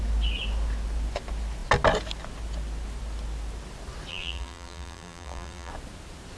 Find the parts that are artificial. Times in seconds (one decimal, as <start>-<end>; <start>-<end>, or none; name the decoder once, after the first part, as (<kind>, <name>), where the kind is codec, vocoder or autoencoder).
4.1-5.7 (vocoder, BigVGAN v2)